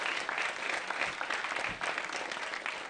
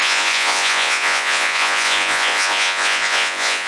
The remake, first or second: second